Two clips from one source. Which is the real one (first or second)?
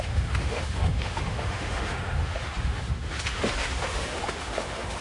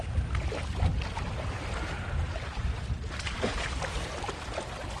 second